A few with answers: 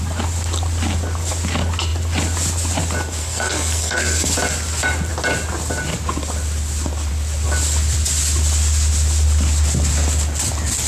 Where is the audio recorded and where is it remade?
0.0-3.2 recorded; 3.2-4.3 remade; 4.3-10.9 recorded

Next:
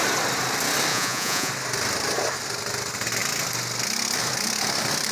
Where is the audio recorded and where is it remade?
0.0-0.9 recorded; 0.9-1.5 remade; 1.5-5.1 recorded

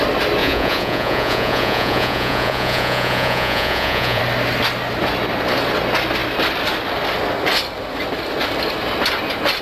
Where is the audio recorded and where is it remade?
0.0-0.4 recorded; 0.4-4.2 remade; 4.2-9.6 recorded

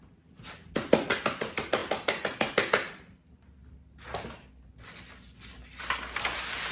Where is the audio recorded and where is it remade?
0.0-6.7 recorded